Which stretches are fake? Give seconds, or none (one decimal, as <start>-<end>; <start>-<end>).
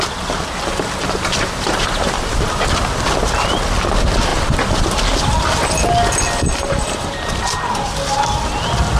none